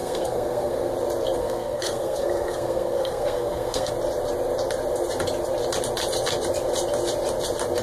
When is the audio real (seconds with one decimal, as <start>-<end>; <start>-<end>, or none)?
0.9-1.4; 3.9-7.8